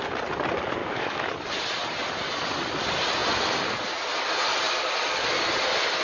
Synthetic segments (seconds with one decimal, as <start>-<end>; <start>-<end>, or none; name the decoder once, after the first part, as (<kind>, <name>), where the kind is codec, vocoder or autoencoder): 0.8-1.3 (autoencoder, DAC-VAE)